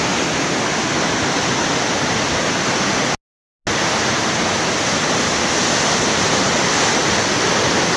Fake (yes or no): no